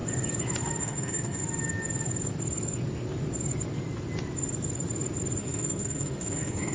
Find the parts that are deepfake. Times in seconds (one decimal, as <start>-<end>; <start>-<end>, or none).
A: 0.8-1.4; 5.4-6.7